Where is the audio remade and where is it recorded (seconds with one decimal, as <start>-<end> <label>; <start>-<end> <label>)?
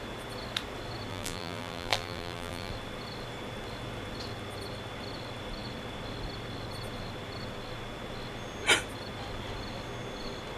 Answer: 0.0-1.1 recorded; 1.1-2.7 remade; 2.7-10.6 recorded